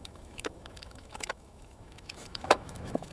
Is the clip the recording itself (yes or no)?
no